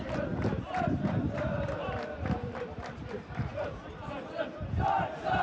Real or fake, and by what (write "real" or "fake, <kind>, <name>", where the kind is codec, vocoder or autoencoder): fake, vocoder, BigVGAN v2